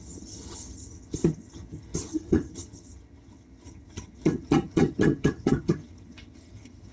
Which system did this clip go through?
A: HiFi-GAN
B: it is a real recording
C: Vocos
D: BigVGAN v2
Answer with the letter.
A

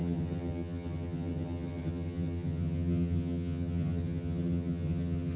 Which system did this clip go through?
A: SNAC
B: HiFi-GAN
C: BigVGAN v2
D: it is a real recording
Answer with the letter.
B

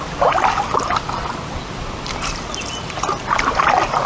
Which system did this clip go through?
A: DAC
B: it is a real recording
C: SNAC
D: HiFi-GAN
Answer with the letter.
B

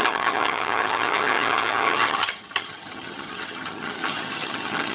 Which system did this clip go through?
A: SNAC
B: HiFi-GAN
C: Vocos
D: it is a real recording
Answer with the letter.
B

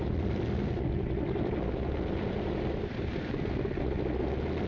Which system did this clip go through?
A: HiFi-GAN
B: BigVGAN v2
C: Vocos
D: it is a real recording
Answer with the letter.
D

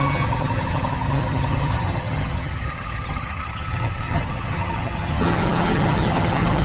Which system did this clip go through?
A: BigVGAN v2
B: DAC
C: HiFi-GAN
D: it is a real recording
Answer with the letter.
C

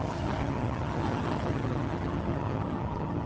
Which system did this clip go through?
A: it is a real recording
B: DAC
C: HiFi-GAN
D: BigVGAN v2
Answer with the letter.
C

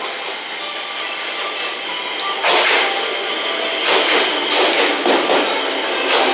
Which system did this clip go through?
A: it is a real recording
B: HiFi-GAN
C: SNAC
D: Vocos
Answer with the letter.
A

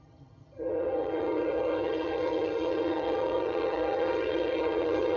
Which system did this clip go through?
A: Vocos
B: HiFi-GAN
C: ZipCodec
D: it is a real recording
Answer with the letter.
B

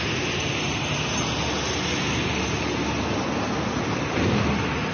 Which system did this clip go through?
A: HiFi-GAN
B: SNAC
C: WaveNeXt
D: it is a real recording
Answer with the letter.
D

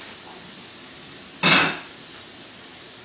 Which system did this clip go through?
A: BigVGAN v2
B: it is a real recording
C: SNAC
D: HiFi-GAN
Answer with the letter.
B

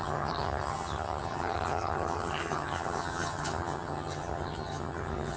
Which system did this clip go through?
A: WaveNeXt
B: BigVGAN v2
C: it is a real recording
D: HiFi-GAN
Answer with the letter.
D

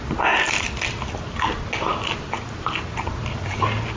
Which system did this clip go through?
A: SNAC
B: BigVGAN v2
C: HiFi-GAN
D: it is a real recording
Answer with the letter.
D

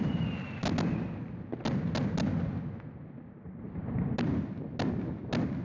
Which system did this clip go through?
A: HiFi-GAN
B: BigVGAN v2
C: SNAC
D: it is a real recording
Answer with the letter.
D